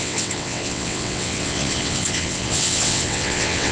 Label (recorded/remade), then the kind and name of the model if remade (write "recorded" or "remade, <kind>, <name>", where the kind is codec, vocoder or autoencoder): remade, vocoder, WaveNeXt